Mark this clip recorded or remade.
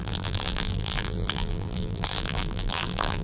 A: remade